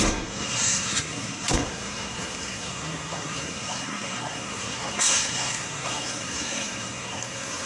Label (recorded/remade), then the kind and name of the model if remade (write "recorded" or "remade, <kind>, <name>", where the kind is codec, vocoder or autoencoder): remade, codec, SNAC